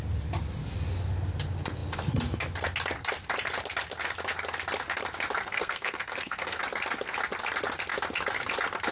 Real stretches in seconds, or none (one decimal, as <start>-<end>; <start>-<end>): 0.0-5.4; 6.6-8.9